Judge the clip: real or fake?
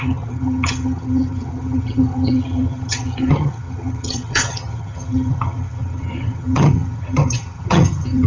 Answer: fake